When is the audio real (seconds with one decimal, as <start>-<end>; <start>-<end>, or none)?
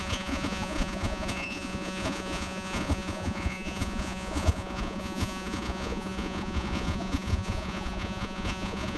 none